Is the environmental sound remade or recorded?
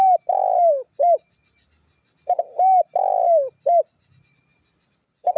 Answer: recorded